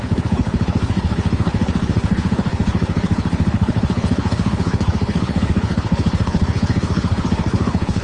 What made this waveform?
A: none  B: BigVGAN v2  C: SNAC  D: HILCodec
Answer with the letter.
D